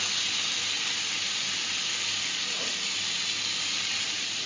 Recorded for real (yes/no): yes